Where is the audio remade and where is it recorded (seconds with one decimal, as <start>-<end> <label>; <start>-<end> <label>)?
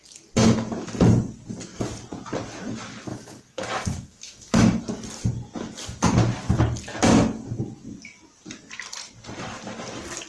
0.0-3.1 recorded; 3.1-4.8 remade; 4.8-10.3 recorded